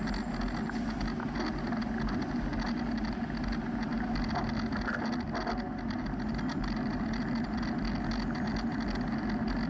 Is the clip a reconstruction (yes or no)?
no